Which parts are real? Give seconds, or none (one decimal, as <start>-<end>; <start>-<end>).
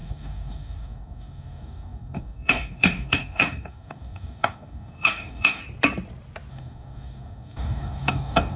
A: 5.6-6.5